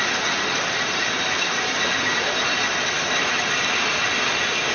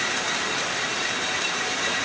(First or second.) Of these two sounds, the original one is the first